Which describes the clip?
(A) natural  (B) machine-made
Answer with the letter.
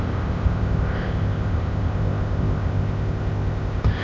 B